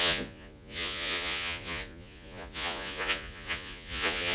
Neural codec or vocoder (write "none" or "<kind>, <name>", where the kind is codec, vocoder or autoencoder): vocoder, Vocos